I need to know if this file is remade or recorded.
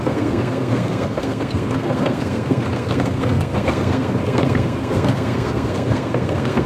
remade